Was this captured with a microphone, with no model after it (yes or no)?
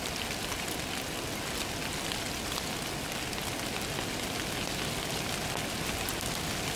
yes